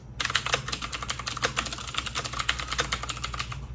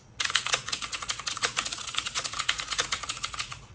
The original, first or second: first